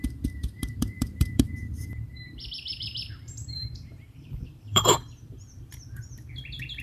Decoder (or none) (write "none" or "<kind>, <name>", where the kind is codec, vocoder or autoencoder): vocoder, BigVGAN v2